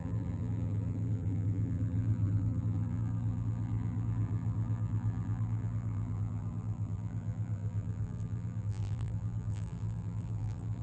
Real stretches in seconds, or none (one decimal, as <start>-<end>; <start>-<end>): none